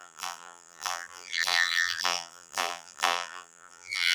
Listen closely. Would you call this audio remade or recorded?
remade